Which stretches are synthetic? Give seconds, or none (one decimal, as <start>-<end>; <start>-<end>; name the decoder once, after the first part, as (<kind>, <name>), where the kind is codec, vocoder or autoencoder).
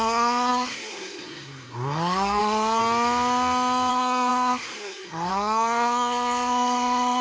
0.0-2.8 (codec, SNAC); 3.9-7.2